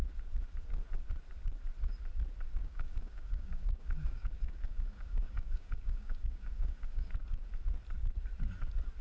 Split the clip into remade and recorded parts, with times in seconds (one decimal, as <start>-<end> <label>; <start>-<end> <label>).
0.0-2.6 recorded; 2.6-7.1 remade; 7.1-9.0 recorded